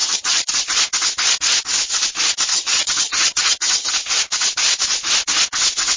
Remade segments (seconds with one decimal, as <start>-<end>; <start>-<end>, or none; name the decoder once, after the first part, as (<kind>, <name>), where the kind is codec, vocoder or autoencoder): 0.0-0.5 (vocoder, HiFi-GAN); 2.5-3.9